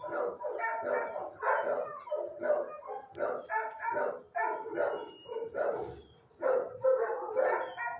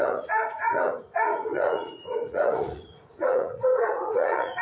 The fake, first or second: second